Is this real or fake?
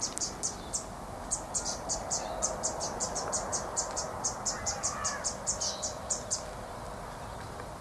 real